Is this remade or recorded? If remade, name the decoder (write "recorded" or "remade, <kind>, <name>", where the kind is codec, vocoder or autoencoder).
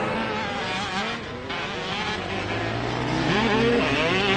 recorded